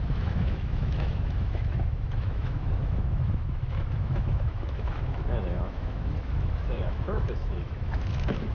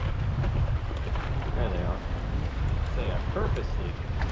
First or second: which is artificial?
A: first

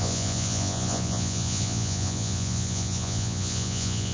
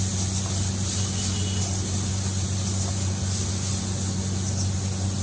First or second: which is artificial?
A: first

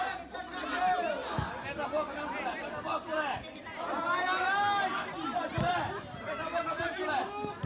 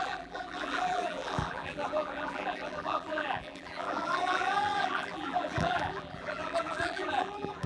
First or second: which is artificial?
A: second